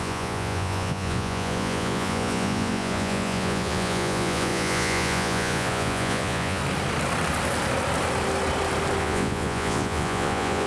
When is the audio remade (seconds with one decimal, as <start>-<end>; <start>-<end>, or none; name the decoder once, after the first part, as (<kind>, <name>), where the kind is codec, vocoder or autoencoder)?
0.0-6.6 (vocoder, Vocos); 9.0-10.7